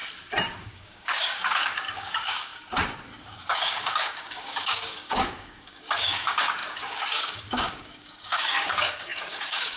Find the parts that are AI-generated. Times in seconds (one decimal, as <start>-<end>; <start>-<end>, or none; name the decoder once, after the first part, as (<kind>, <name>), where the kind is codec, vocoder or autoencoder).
0.6-2.5 (codec, DAC); 3.2-9.8